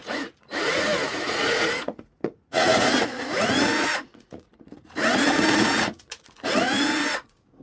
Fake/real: fake